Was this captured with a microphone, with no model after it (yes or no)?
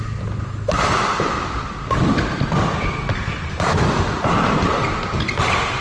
yes